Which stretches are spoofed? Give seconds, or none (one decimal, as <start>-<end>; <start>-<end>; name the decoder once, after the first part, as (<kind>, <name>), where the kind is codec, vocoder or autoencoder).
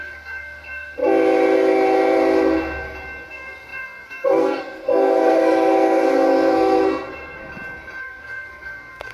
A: 0.0-1.0 (codec, SNAC); 3.3-7.4; 8.0-9.1